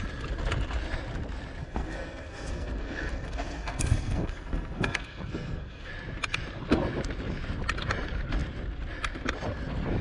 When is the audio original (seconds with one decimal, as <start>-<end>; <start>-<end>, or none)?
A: 0.0-1.6; 5.9-10.0